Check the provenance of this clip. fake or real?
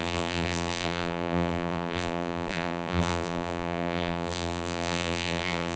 fake